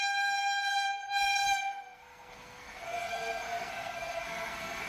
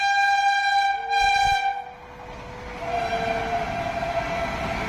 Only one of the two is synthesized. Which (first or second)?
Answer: first